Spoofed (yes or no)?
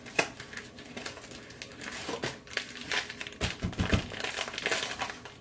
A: no